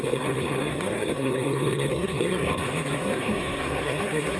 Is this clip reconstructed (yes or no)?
yes